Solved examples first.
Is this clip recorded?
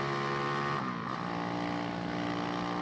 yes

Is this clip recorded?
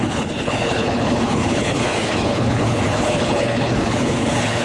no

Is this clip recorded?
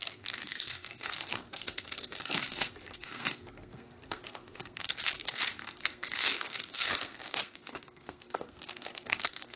no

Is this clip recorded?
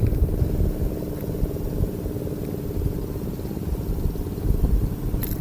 yes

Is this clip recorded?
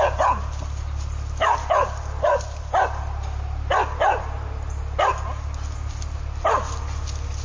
yes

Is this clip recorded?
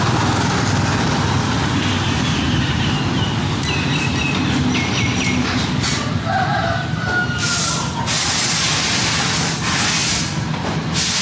yes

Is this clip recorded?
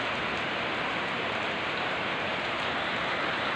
no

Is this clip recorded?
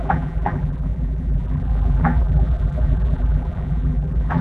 no